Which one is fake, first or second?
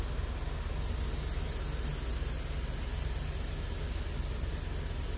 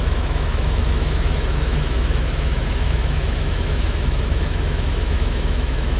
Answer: second